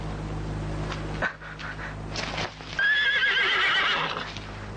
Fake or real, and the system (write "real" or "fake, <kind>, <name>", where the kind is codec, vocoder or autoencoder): real